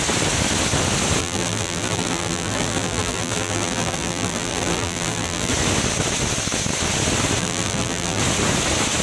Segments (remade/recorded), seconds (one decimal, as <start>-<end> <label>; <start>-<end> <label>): 0.0-1.2 recorded; 1.2-5.5 remade; 5.5-7.4 recorded; 7.4-8.2 remade; 8.2-9.0 recorded